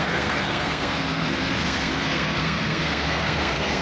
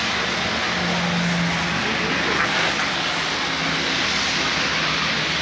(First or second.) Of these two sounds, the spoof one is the first